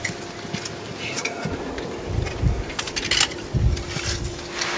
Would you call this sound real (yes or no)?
yes